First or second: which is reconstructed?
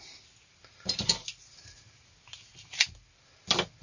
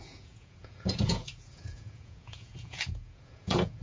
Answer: second